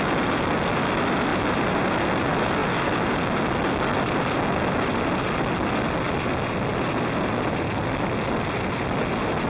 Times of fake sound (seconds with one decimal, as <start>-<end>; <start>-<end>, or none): 1.3-1.9

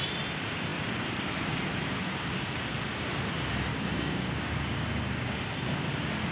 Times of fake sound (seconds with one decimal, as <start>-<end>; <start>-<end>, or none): 3.7-5.4

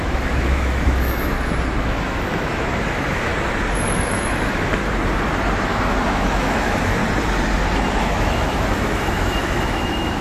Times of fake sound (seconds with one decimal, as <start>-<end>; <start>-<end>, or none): 0.0-1.3; 1.8-3.3; 4.1-4.8; 5.6-7.0; 8.0-10.2

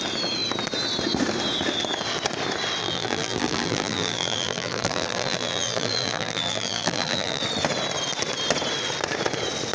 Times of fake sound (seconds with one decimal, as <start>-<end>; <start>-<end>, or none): 2.8-7.4

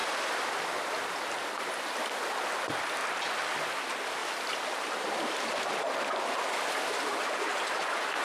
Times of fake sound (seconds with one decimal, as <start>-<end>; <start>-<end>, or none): 0.0-1.8; 3.0-3.7

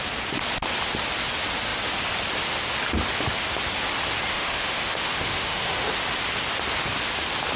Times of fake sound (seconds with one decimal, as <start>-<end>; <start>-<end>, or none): 4.3-5.9

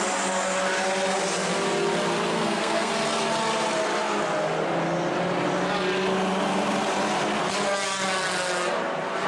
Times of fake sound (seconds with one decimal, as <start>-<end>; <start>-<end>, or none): 2.3-2.9